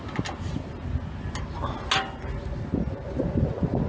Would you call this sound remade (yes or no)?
no